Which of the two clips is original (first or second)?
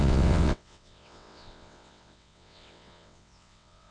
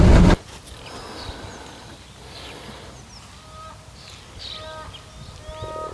second